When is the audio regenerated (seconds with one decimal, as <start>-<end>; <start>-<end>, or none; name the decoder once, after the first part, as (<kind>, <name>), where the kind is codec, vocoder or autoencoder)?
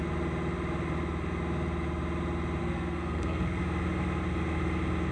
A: 2.6-3.6 (codec, SNAC)